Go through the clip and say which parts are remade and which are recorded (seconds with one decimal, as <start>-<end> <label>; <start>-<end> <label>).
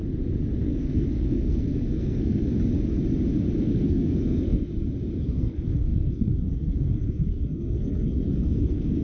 0.0-0.6 recorded; 0.6-2.5 remade; 2.5-3.6 recorded; 3.6-4.7 remade; 4.7-5.2 recorded; 5.2-9.0 remade